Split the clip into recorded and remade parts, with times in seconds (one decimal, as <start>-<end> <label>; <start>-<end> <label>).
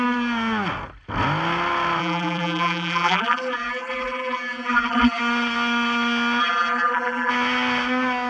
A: 0.0-2.0 recorded; 2.0-5.2 remade; 5.2-6.4 recorded; 6.4-7.3 remade; 7.3-8.3 recorded